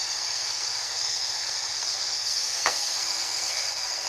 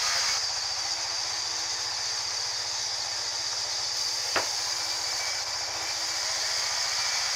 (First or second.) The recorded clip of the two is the second